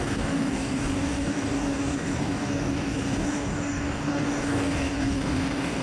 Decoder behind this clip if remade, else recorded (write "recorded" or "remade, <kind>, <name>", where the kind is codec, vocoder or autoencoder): remade, codec, DAC